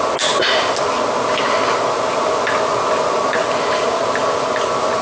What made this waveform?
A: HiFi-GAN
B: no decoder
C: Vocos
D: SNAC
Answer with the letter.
B